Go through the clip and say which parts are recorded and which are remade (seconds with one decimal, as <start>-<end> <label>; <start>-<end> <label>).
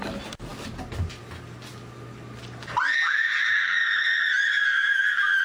0.0-5.4 recorded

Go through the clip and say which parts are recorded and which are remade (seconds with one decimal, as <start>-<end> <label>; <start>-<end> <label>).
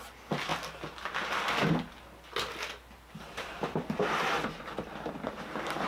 0.0-0.5 remade; 0.5-4.0 recorded; 4.0-5.9 remade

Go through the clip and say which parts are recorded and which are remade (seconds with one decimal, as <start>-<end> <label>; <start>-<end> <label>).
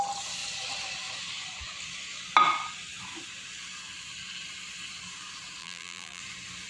0.0-5.6 recorded; 5.6-6.2 remade; 6.2-6.7 recorded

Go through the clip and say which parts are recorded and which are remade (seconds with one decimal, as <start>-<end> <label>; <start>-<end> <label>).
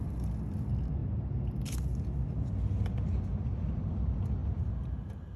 0.0-5.4 recorded